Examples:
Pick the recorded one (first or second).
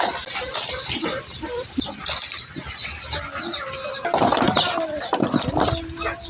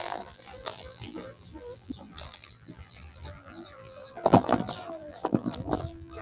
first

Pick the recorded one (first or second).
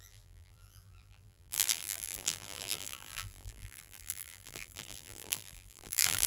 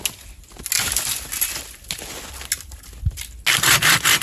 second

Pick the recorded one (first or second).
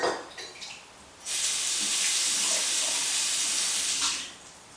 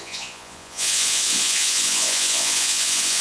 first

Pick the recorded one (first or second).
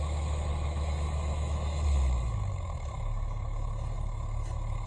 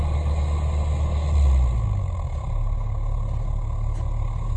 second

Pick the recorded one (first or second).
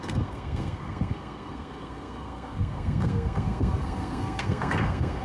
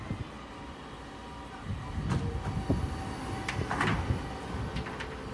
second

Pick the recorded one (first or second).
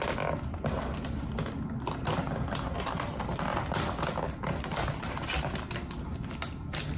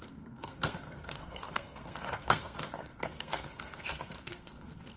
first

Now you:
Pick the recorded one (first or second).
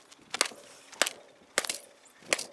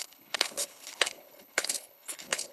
first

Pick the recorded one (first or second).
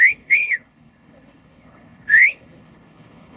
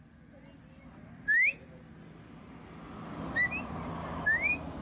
second